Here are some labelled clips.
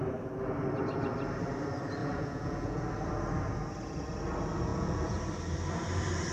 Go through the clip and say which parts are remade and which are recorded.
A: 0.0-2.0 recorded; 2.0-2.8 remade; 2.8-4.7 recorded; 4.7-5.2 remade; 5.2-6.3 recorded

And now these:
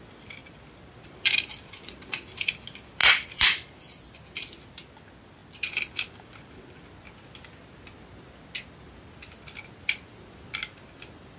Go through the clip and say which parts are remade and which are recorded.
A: 0.0-0.4 recorded; 0.4-2.5 remade; 2.5-3.0 recorded; 3.0-4.6 remade; 4.6-5.4 recorded; 5.4-6.8 remade; 6.8-11.4 recorded

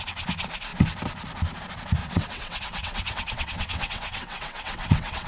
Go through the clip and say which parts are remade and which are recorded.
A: 0.0-2.0 recorded; 2.0-5.3 remade

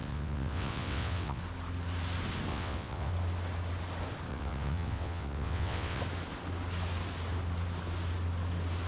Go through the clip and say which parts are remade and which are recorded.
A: 0.0-1.4 remade; 1.4-2.5 recorded; 2.5-3.1 remade; 3.1-4.3 recorded; 4.3-6.0 remade; 6.0-8.9 recorded

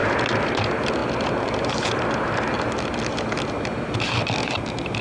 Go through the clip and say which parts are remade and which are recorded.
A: 0.0-5.0 recorded